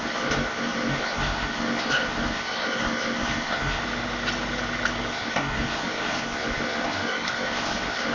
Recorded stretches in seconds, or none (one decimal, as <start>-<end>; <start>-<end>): 3.8-5.1